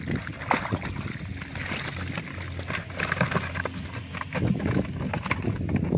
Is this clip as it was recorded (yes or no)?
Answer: yes